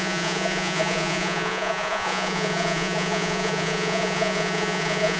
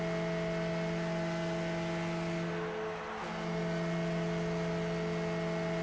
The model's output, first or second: first